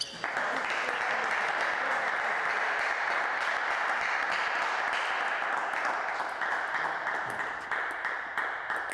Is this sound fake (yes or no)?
no